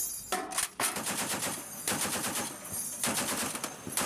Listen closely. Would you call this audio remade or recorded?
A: recorded